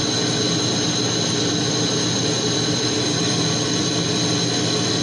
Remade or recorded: recorded